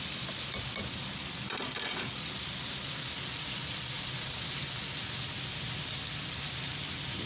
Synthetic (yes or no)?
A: no